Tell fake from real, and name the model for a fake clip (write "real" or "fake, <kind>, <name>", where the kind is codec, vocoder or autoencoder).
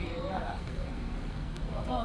fake, codec, SNAC